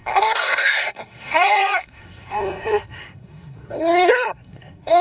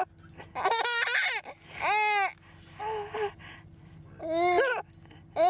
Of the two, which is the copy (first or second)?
first